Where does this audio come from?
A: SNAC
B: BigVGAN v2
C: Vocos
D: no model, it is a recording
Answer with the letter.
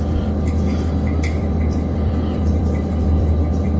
B